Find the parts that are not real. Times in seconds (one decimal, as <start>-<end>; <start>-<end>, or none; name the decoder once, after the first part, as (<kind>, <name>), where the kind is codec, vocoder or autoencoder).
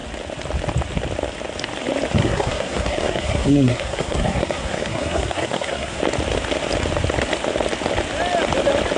2.2-6.0 (codec, SNAC)